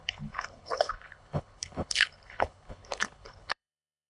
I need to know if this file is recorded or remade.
remade